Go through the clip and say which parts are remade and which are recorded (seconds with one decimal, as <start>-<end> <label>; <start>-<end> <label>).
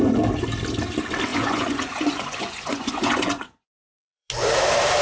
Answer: 0.0-1.3 recorded; 1.3-4.3 remade; 4.3-5.0 recorded